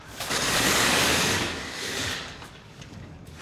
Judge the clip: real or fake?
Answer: fake